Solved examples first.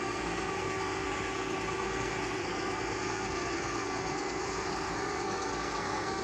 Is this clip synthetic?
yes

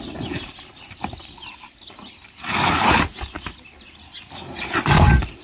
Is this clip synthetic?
no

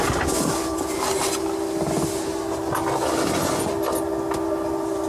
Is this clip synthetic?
no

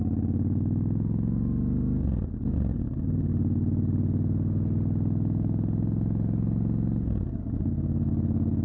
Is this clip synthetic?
no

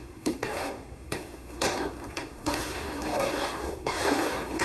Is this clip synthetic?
yes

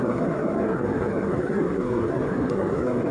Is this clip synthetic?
yes